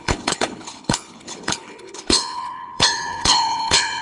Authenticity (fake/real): fake